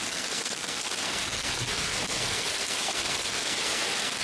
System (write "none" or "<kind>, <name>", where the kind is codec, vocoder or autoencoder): codec, SNAC